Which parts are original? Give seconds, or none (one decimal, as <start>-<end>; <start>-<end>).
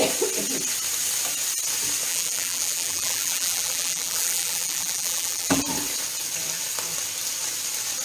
0.0-2.1; 5.6-8.0